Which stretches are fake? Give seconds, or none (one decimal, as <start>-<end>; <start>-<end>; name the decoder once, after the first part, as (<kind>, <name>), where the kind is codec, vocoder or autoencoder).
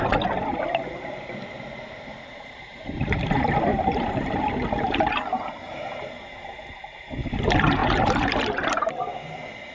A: 1.4-2.6 (vocoder, BigVGAN v2); 3.7-5.6; 7.8-8.9